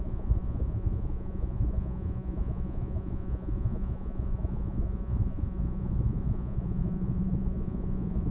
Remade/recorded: remade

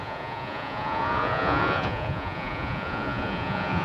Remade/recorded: remade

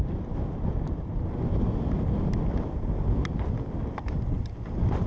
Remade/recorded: recorded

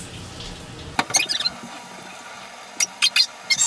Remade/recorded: recorded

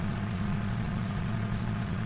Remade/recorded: remade